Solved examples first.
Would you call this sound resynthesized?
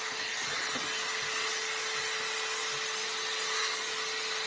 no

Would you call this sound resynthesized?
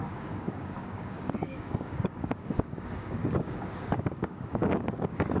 yes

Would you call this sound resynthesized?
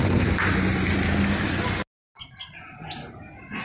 no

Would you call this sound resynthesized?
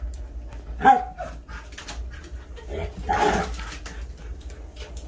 no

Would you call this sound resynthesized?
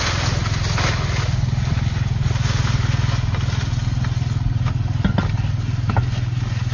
no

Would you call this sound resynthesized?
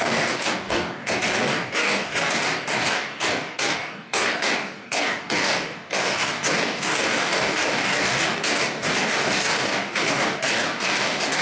yes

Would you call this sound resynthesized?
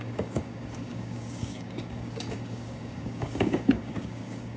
yes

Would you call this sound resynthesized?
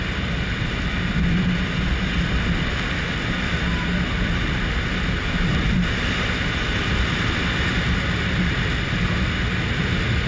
no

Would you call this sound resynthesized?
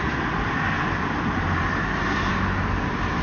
no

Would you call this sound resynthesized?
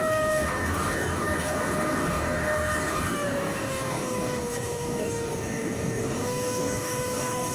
yes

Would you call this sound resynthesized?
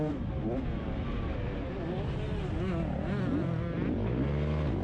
no